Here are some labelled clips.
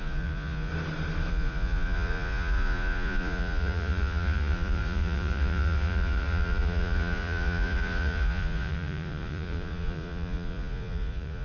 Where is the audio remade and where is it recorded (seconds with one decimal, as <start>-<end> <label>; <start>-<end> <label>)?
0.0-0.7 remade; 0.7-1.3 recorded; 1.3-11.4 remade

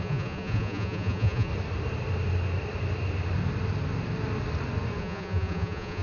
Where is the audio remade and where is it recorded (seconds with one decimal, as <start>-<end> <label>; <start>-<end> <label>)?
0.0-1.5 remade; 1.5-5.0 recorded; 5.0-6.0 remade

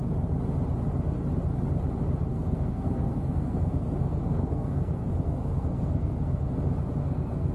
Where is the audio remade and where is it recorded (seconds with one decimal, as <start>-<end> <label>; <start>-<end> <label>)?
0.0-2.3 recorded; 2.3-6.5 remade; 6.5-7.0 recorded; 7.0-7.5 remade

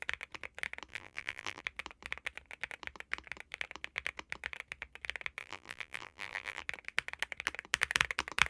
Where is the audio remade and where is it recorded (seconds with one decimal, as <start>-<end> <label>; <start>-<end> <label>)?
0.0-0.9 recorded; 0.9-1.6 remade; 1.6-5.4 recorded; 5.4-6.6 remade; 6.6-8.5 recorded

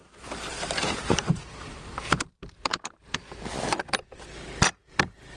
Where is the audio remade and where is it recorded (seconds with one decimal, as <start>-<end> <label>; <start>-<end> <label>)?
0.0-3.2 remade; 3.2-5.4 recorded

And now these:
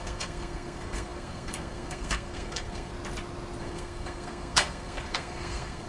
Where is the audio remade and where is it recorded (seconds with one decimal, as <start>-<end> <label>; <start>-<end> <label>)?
0.0-2.9 remade; 2.9-3.6 recorded; 3.6-5.9 remade